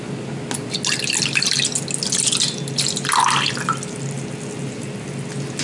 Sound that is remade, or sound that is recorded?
recorded